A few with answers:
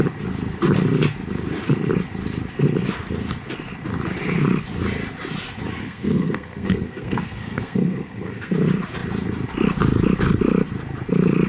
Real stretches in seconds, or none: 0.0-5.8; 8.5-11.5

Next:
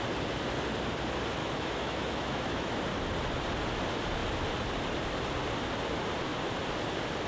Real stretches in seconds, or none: 0.0-1.4; 2.8-7.3

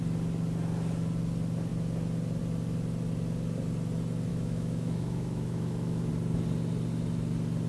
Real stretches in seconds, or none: 0.0-4.3; 6.1-7.7

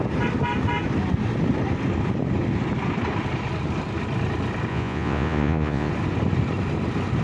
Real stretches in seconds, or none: 0.0-4.7; 5.9-7.2

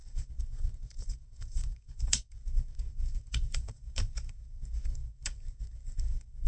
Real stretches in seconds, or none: none

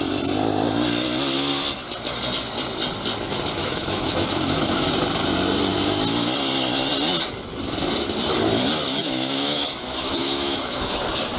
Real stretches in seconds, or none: 0.0-3.6; 4.9-9.0; 11.0-11.4

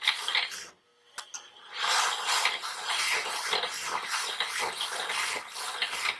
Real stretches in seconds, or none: 0.0-6.2

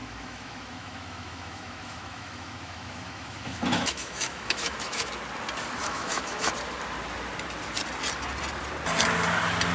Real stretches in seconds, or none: 5.1-5.8; 6.5-9.7